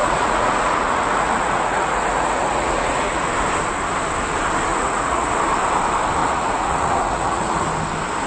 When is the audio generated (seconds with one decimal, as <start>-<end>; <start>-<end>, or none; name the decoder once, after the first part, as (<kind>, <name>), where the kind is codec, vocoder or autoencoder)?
0.0-3.3 (vocoder, Vocos); 4.7-5.4; 6.2-7.6